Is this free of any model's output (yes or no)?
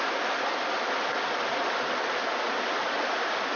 yes